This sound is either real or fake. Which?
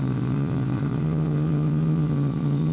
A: fake